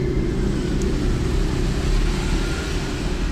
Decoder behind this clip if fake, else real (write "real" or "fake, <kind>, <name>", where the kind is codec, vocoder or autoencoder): real